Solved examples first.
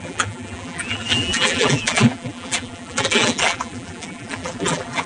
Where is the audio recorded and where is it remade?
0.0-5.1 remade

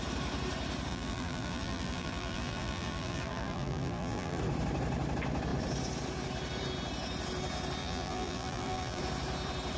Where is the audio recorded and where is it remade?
0.0-0.9 recorded; 0.9-4.4 remade; 4.4-7.8 recorded; 7.8-9.0 remade; 9.0-9.8 recorded